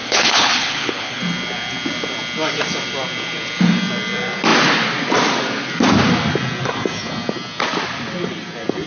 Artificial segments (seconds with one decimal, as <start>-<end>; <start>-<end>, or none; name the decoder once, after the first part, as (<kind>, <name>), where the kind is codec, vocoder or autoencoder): 0.0-1.2 (codec, HILCodec)